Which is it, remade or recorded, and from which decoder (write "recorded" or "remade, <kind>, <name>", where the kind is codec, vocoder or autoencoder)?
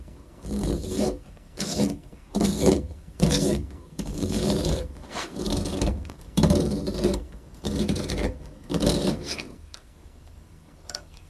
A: remade, codec, SNAC